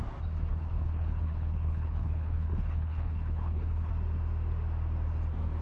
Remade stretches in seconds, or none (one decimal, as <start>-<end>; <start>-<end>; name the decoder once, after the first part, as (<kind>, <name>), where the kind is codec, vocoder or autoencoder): 0.5-3.9 (codec, HILCodec)